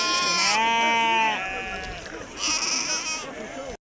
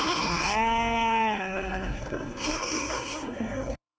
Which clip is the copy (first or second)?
second